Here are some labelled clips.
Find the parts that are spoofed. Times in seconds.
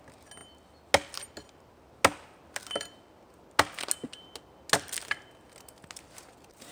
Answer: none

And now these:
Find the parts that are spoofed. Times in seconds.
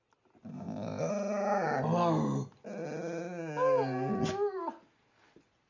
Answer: 0.5-1.1 (codec, ZipCodec)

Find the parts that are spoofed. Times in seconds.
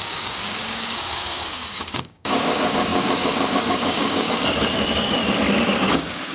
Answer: 0.0-5.2 (codec, DAC); 5.8-6.3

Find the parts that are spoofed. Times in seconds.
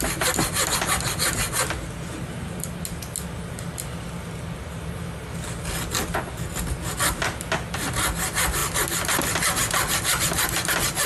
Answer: none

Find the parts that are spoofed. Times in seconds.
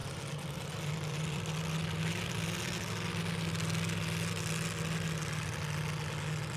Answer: 0.0-2.0 (vocoder, BigVGAN v2)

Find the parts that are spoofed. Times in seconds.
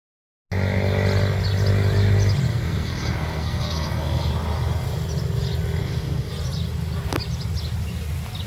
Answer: 2.5-4.3 (codec, SNAC); 5.8-6.3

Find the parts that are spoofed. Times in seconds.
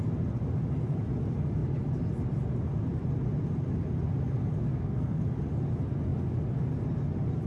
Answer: 4.6-5.2 (codec, SNAC)